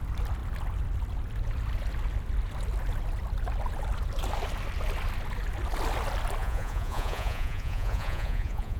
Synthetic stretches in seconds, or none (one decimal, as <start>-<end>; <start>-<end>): 6.4-8.8